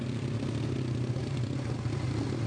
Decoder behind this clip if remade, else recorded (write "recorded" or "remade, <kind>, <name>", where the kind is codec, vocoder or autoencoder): recorded